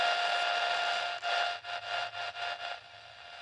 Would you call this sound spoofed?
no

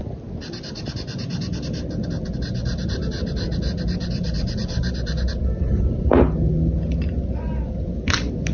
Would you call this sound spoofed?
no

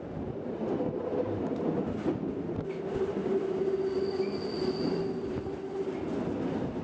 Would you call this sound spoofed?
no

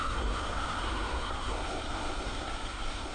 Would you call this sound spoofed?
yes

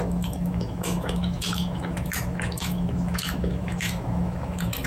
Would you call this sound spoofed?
yes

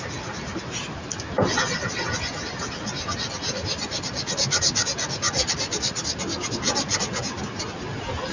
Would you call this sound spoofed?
no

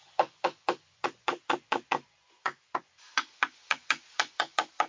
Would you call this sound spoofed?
yes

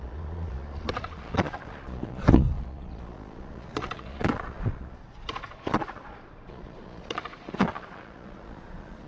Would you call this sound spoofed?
yes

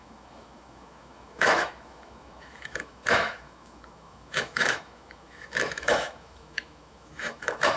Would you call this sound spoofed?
yes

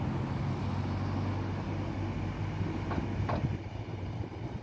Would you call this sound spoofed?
no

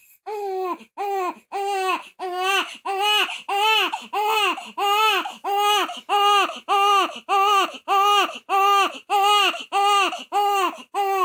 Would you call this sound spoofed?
no